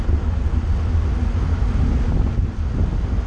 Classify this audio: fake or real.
real